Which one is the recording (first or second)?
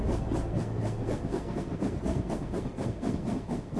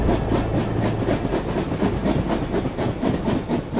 second